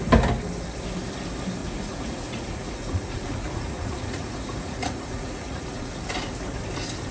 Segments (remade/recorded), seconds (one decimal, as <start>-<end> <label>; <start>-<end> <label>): 0.0-1.6 recorded; 1.6-5.9 remade; 5.9-7.1 recorded